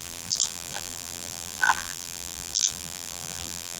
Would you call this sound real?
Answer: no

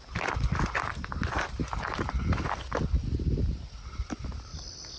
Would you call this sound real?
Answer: yes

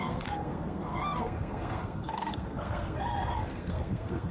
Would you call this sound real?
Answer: no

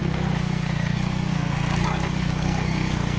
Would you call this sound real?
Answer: no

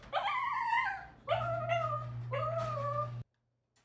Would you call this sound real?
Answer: yes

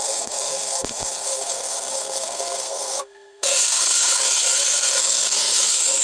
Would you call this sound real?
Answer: no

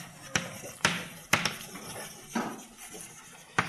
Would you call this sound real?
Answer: yes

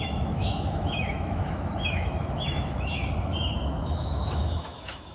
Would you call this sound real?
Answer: no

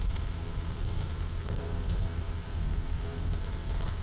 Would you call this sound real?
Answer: no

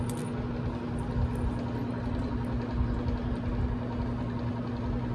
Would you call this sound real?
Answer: yes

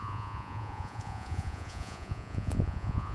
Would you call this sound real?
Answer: no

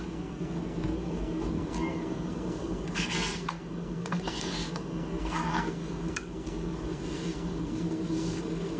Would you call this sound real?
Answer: no